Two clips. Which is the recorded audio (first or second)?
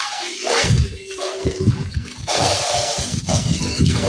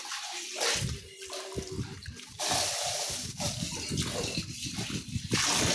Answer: second